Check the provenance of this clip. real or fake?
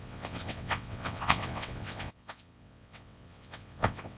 fake